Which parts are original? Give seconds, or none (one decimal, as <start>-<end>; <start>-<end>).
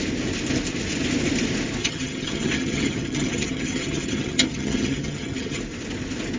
0.0-1.8; 5.6-6.4